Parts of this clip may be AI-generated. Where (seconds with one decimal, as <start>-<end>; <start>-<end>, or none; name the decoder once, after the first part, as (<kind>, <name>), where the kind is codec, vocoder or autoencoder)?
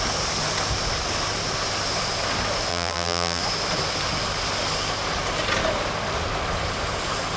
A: 2.7-3.4 (vocoder, BigVGAN v2)